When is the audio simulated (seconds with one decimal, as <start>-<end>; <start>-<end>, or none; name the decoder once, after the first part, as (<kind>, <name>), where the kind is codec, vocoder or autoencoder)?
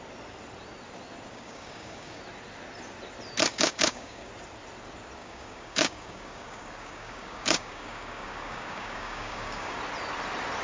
1.3-2.2 (codec, DAC); 3.5-4.3; 5.2-9.8